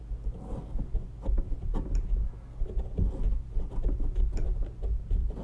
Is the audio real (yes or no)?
yes